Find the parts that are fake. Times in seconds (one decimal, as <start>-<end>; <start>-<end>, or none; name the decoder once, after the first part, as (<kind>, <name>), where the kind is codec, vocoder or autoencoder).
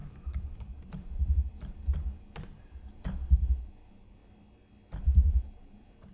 0.0-4.2 (vocoder, BigVGAN v2); 5.0-6.1